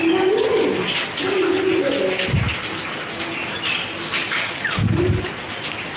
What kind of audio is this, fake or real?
real